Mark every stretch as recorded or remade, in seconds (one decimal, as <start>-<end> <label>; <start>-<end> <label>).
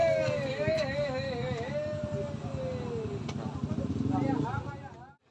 0.0-2.0 remade; 2.0-5.3 recorded